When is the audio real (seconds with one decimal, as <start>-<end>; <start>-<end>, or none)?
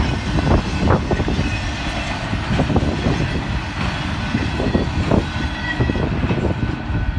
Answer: 0.0-7.2